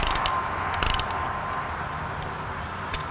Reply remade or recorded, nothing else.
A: recorded